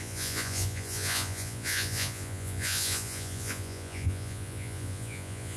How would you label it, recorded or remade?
remade